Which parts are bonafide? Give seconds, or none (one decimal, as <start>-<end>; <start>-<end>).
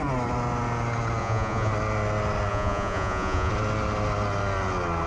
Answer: 0.0-1.2; 1.7-2.5; 3.5-5.1